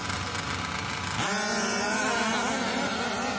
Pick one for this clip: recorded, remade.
recorded